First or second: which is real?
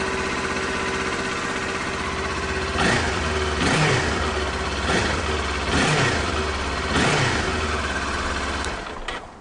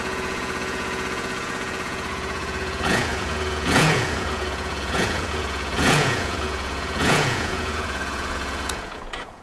first